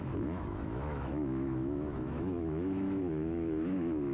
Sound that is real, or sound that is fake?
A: fake